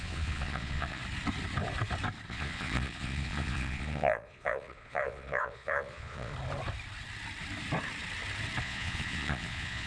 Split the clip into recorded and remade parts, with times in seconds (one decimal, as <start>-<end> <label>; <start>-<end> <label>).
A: 0.0-1.0 remade; 1.0-2.3 recorded; 2.3-6.3 remade; 6.3-8.6 recorded; 8.6-9.9 remade